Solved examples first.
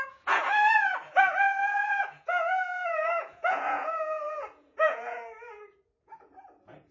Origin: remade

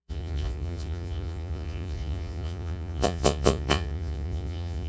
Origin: remade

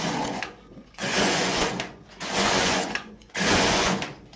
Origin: remade